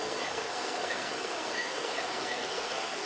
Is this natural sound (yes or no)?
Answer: no